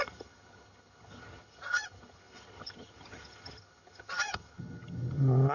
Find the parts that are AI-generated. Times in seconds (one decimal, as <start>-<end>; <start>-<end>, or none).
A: 0.0-5.5